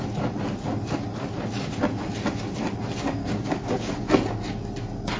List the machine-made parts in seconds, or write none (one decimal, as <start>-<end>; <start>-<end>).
3.2-3.9